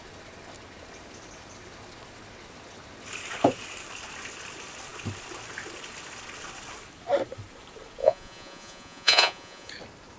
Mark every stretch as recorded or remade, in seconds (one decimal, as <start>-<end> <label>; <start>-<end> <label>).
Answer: 0.0-8.0 recorded; 8.0-9.7 remade; 9.7-10.2 recorded